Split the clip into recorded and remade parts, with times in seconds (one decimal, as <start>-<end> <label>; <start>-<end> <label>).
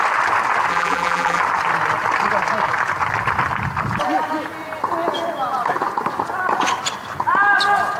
0.0-0.7 recorded; 0.7-1.4 remade; 1.4-8.0 recorded